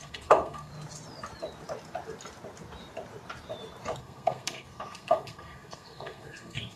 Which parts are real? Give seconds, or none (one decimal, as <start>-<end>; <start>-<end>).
0.7-4.0